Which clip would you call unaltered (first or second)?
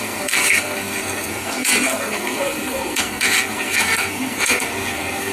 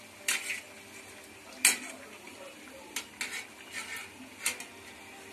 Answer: second